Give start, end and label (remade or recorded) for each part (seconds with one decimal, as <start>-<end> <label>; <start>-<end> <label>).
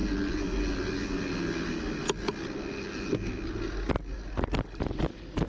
0.0-5.5 recorded